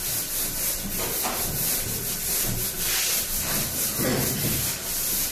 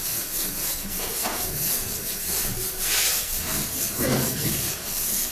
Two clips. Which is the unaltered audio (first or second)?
first